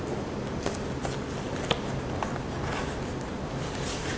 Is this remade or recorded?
recorded